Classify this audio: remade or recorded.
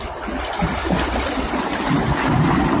remade